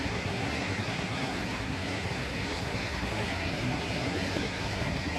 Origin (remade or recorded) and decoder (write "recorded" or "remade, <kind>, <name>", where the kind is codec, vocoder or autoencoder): remade, codec, SNAC